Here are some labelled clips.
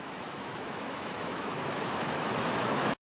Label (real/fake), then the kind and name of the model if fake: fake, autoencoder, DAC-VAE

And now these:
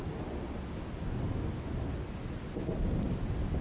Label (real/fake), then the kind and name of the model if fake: real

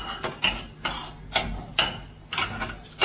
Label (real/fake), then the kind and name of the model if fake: real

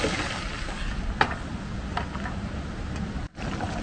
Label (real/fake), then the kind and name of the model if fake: real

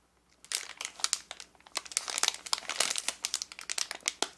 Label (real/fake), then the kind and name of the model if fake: real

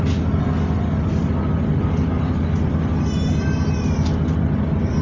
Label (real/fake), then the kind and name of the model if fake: real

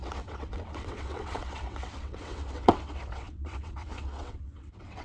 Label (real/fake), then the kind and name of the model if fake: fake, vocoder, WaveNeXt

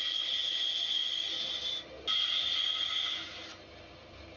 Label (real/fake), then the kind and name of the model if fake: real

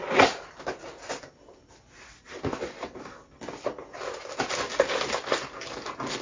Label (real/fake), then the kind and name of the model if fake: real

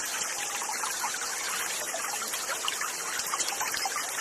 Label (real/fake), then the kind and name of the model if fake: real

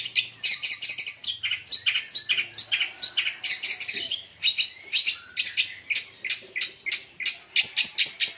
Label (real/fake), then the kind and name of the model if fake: real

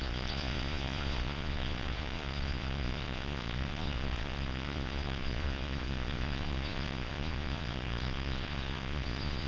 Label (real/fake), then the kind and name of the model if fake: fake, vocoder, Vocos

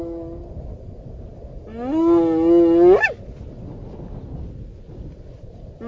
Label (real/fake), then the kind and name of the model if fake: real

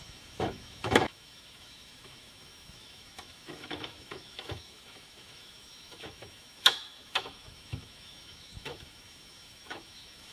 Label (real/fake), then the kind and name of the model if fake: fake, autoencoder, DAC-VAE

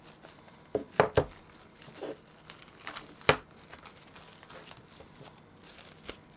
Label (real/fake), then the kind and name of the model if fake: real